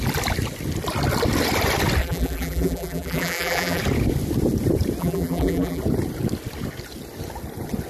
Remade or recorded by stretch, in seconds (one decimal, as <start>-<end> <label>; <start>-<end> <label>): 0.0-2.0 recorded; 2.0-3.8 remade; 3.8-5.0 recorded; 5.0-5.8 remade; 5.8-7.9 recorded